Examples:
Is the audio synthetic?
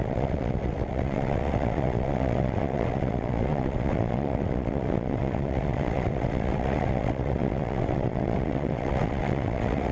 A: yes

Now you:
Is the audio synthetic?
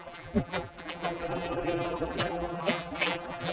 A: yes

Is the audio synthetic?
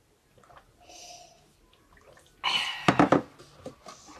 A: no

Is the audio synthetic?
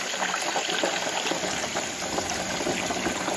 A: no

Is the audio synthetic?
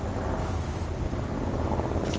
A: no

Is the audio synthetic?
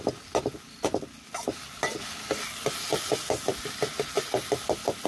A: no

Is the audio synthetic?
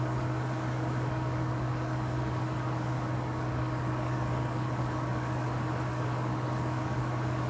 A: yes